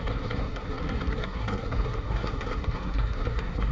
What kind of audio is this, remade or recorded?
remade